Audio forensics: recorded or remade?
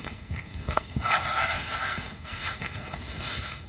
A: remade